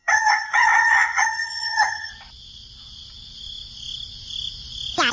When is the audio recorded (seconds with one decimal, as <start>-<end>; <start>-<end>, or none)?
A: 2.1-5.1